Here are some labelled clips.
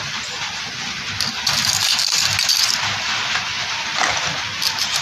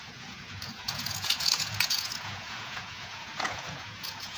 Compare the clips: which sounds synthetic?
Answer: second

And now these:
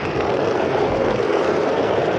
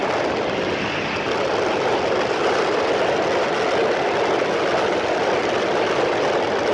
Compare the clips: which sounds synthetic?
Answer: first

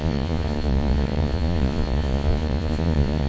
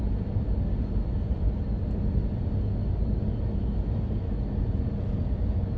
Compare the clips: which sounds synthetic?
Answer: first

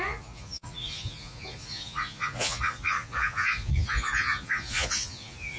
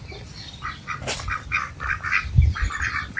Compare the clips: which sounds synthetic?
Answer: first